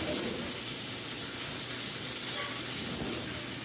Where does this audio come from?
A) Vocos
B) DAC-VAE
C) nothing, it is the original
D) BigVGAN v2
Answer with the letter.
C